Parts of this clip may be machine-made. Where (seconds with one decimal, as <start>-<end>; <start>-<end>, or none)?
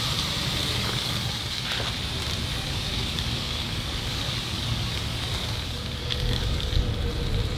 0.6-1.6; 2.5-6.8